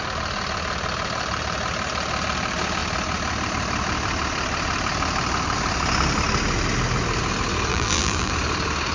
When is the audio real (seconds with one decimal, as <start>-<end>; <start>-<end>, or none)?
0.0-7.7; 8.3-8.9